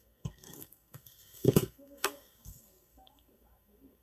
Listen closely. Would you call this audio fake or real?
fake